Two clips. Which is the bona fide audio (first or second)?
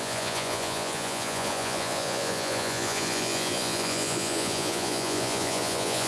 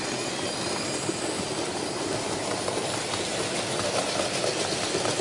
second